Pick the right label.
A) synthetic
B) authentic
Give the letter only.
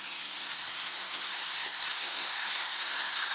A